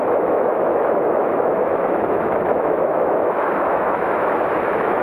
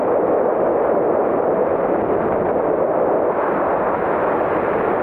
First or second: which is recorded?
second